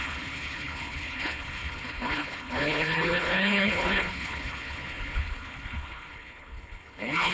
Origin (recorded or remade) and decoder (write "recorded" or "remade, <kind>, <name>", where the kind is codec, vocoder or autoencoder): remade, codec, HILCodec